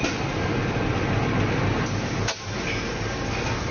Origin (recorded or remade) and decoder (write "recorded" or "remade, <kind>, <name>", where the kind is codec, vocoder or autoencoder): recorded